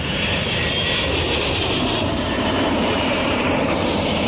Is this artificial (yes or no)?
yes